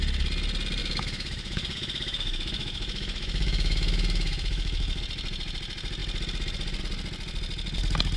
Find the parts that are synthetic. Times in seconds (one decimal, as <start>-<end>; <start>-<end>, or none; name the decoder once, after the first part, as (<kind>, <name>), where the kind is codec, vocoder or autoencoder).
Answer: 0.8-5.0 (autoencoder, DAC-VAE)

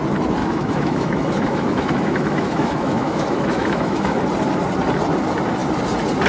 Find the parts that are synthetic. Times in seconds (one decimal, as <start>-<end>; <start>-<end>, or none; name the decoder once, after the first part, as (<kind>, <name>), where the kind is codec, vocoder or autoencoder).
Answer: 0.4-4.2 (autoencoder, DAC-VAE)